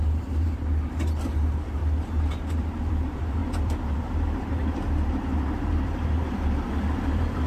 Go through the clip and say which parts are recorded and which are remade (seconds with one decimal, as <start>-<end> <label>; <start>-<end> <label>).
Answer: 0.0-1.8 remade; 1.8-2.3 recorded; 2.3-7.5 remade